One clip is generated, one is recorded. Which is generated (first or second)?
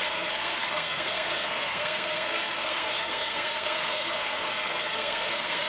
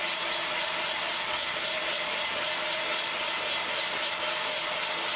first